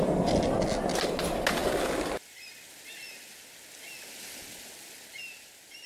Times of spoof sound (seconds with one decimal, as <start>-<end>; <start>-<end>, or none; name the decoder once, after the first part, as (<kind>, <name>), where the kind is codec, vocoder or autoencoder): none